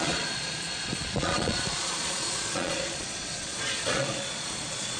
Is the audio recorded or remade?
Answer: remade